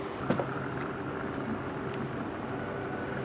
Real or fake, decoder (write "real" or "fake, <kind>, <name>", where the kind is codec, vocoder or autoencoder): real